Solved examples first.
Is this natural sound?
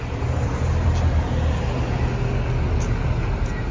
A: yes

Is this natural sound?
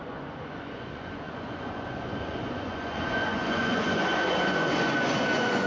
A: no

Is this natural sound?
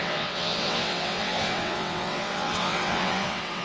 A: no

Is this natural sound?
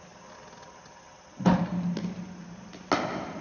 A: yes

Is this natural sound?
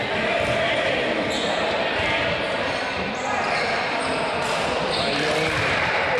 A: yes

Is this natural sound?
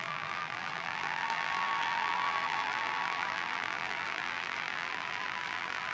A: no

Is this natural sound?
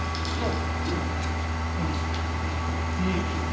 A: yes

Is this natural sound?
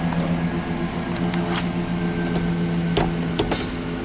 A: yes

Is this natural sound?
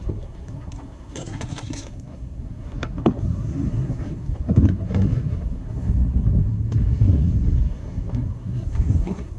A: no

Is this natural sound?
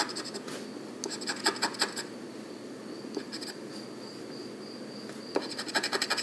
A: yes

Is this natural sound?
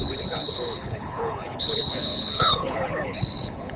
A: no